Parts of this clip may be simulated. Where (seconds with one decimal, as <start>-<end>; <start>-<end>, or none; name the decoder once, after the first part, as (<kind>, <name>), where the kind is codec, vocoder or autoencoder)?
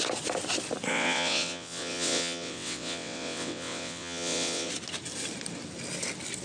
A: 0.9-4.7 (vocoder, WaveNeXt)